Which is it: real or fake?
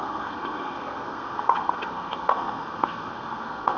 fake